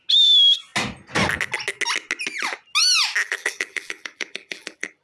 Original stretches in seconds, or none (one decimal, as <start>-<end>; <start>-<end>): 0.0-3.2